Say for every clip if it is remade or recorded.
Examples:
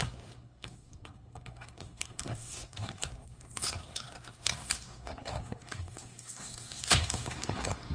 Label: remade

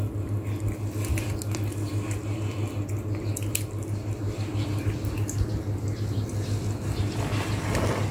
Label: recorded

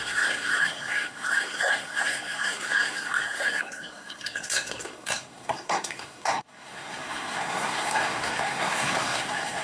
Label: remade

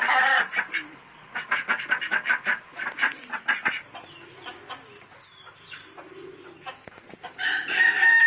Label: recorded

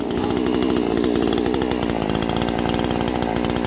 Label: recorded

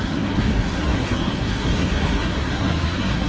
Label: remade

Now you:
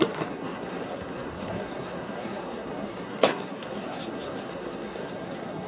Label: remade